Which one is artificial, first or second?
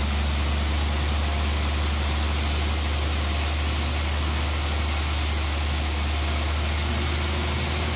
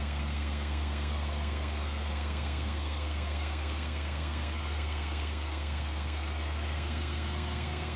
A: second